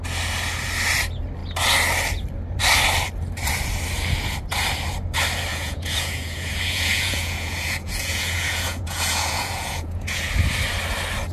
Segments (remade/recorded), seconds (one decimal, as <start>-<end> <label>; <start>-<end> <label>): 0.0-5.5 recorded; 5.5-10.3 remade; 10.3-11.3 recorded